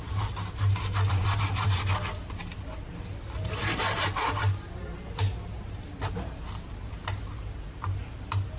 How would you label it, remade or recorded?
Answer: recorded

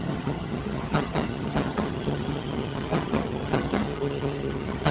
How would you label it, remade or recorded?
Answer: remade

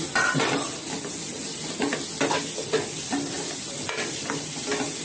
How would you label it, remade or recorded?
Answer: recorded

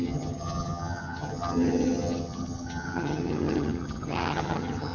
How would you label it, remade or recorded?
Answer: remade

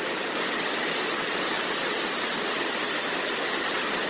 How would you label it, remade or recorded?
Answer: recorded